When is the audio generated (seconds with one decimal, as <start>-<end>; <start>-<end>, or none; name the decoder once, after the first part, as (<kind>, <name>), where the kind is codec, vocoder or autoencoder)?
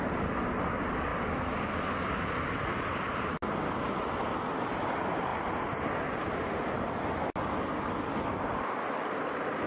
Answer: none